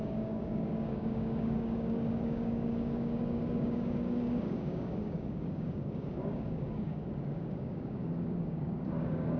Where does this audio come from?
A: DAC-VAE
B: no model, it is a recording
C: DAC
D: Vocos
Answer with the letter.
C